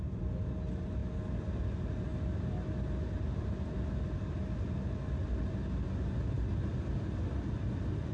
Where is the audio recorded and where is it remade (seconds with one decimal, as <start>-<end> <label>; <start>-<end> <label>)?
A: 0.0-8.1 recorded